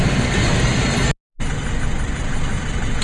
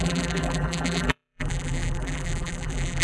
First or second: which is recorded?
first